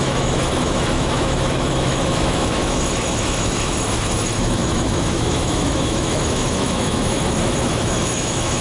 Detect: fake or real fake